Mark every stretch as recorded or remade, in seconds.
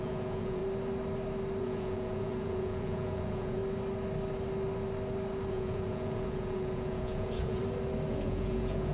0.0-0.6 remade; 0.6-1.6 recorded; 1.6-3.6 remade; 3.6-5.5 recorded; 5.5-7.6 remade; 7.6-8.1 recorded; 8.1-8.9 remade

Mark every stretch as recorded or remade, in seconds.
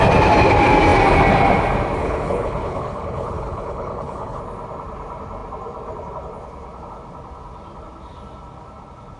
0.0-2.0 recorded; 2.0-4.4 remade; 4.4-9.2 recorded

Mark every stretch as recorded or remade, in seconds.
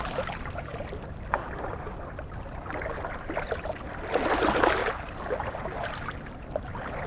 0.0-7.1 recorded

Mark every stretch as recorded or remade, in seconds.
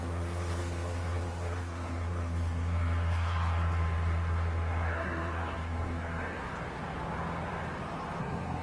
0.0-6.5 remade; 6.5-8.2 recorded; 8.2-8.6 remade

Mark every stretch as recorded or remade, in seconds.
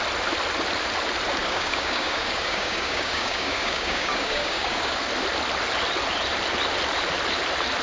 0.0-1.4 recorded; 1.4-5.0 remade; 5.0-7.8 recorded